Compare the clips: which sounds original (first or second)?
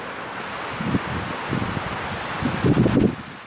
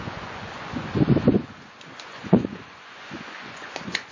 first